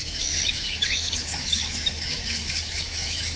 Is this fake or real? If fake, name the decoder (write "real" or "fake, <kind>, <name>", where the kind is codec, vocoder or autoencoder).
fake, autoencoder, DAC-VAE